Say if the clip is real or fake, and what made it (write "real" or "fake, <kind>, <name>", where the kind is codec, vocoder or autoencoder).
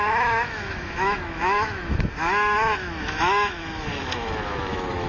fake, autoencoder, DAC-VAE